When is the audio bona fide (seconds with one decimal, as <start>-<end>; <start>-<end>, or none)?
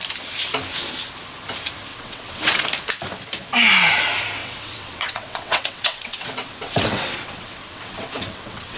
0.0-1.9; 2.6-4.4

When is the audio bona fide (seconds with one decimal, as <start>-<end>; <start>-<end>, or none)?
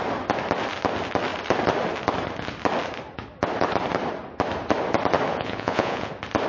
0.0-5.3; 6.1-6.5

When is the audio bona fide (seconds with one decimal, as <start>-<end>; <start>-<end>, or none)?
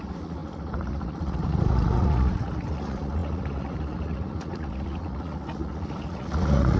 none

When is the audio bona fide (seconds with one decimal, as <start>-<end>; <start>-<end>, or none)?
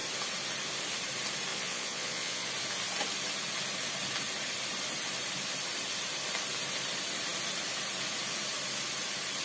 0.0-1.5; 2.5-9.4